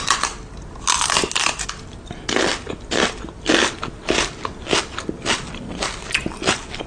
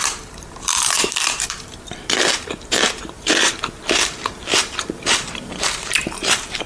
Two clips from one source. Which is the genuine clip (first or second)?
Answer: first